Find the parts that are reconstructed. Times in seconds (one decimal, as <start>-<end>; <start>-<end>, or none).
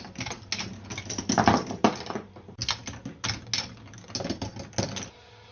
none